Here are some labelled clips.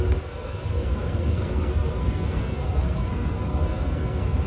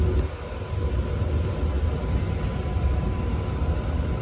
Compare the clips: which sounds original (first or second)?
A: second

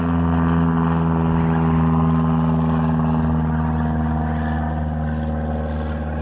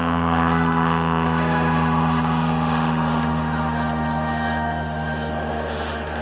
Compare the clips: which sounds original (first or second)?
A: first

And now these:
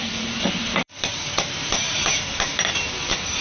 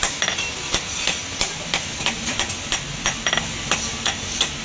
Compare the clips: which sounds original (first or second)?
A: second